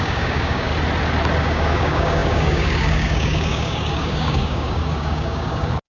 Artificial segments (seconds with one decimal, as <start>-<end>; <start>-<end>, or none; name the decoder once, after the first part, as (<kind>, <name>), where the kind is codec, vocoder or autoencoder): 0.0-0.7 (codec, DAC); 1.4-5.9